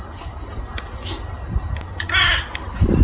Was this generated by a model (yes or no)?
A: no